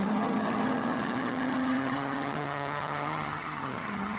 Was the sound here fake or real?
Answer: fake